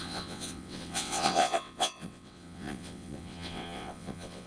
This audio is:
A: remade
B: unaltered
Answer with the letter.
A